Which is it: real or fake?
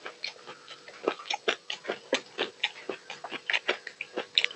real